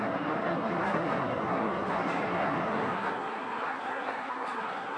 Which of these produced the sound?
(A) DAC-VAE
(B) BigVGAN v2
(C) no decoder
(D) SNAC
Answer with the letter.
D